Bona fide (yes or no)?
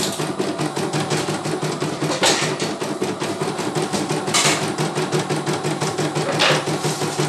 yes